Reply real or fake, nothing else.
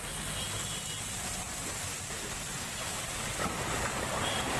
real